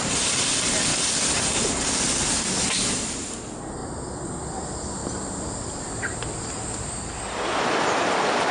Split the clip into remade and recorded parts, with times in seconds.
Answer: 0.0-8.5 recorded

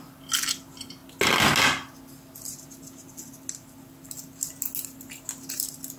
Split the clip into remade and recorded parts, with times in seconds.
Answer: 0.0-6.0 recorded

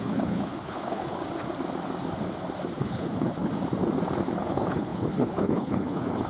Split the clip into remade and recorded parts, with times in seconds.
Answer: 0.0-1.2 remade; 1.2-2.8 recorded; 2.8-3.5 remade; 3.5-4.4 recorded; 4.4-6.3 remade